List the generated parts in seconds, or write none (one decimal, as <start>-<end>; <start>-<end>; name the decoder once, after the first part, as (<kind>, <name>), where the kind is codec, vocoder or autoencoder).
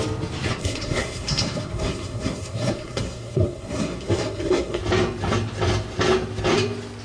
0.6-4.8 (codec, SNAC)